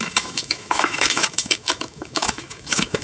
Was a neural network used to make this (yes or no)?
yes